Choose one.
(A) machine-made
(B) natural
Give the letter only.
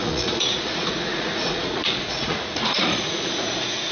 A